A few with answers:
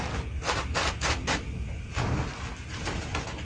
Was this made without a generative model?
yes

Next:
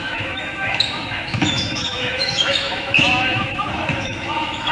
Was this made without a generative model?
no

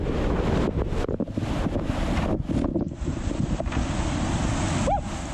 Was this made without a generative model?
yes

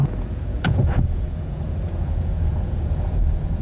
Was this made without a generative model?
no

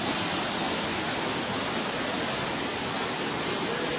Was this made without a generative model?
yes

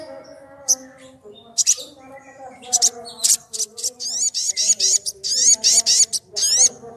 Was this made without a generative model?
yes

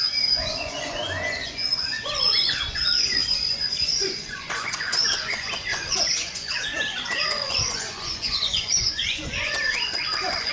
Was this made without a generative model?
no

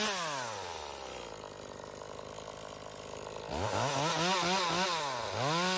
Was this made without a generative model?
yes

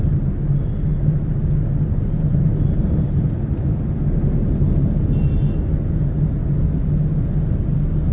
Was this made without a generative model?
yes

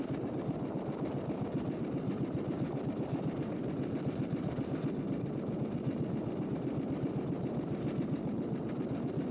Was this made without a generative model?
yes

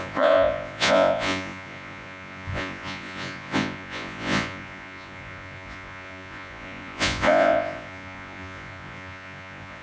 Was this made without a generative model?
no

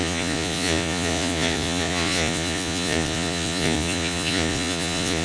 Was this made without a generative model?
no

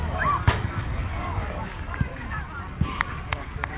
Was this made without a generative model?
no